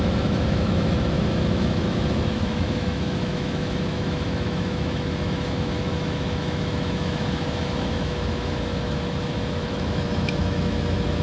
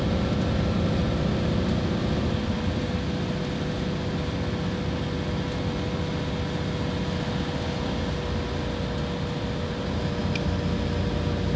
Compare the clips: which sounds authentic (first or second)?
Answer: second